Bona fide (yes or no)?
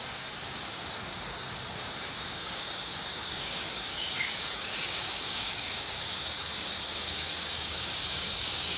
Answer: no